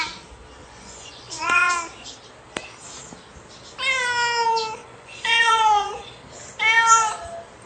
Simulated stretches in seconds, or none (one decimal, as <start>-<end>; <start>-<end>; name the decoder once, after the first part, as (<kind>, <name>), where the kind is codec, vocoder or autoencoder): 0.6-1.7 (vocoder, Vocos); 4.8-6.1